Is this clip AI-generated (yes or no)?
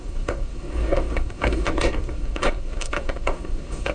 yes